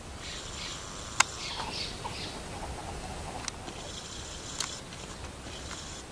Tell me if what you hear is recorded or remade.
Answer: recorded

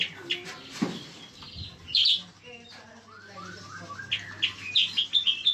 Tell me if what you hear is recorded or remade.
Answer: recorded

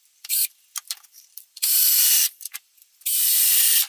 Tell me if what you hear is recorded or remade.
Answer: remade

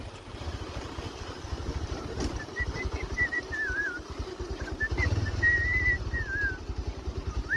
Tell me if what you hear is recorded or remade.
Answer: remade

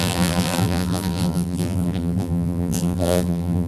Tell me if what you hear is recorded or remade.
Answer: remade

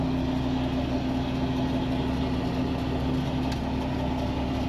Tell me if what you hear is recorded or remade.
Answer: recorded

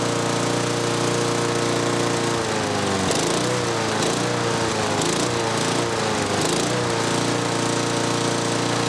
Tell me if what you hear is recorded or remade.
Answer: recorded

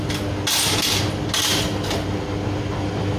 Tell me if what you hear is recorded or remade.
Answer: recorded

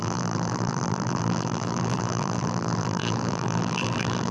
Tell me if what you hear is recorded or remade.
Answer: remade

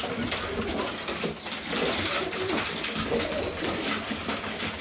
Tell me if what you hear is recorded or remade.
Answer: recorded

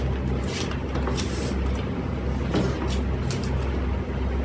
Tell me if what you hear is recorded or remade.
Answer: recorded